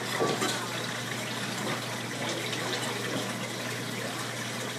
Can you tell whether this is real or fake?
real